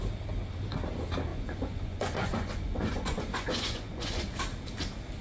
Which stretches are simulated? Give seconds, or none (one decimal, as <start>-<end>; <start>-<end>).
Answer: 1.3-4.4

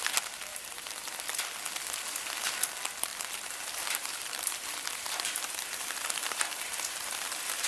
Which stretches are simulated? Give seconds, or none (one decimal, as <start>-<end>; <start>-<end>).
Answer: 0.5-1.1; 3.1-7.7

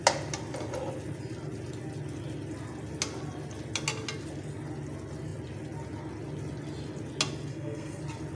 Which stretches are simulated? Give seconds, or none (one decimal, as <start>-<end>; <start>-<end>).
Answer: 7.5-8.0